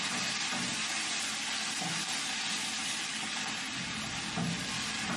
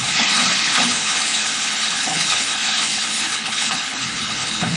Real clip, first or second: first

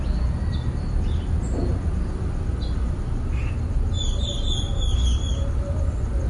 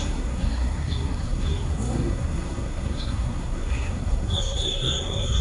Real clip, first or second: first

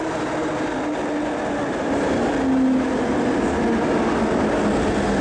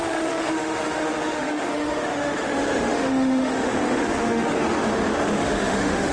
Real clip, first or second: first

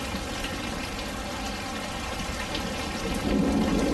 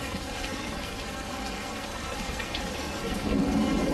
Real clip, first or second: first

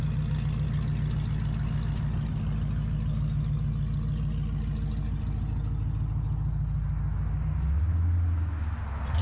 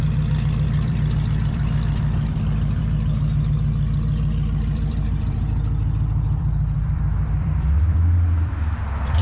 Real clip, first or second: first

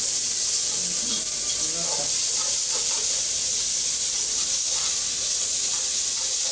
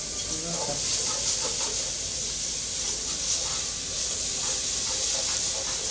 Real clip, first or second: first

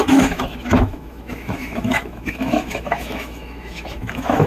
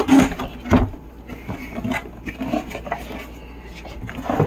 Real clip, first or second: second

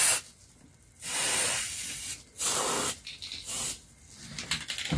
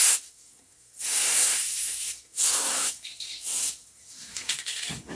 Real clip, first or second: first